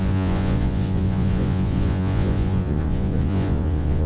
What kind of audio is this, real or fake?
fake